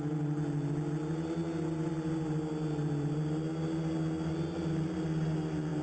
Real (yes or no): yes